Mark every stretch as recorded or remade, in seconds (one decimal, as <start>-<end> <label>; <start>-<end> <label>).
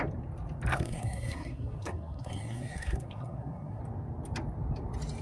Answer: 0.0-0.7 recorded; 0.7-3.8 remade; 3.8-5.2 recorded